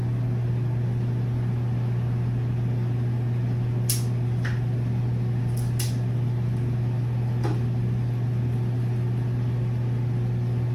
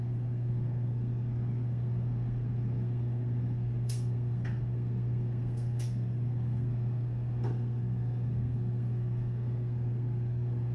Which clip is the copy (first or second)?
second